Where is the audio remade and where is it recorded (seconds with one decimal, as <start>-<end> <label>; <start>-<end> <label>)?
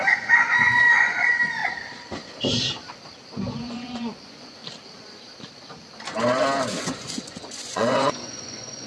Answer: 0.0-1.6 remade; 1.6-3.5 recorded; 3.5-4.6 remade; 4.6-6.8 recorded; 6.8-8.9 remade